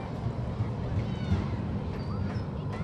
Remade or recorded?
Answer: recorded